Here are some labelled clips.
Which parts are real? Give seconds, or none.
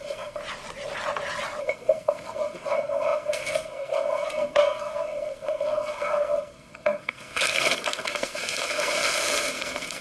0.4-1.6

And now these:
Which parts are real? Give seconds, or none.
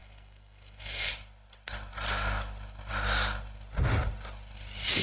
1.1-5.0